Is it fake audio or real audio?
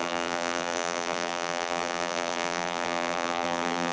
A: fake